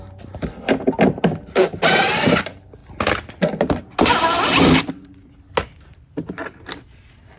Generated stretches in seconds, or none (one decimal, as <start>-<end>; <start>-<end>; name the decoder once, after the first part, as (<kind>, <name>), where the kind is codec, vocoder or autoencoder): none